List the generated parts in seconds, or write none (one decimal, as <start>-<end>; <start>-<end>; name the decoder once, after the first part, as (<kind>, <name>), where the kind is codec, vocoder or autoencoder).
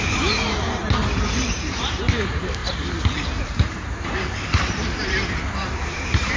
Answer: 0.0-0.8 (vocoder, BigVGAN v2); 1.4-2.6; 3.4-6.4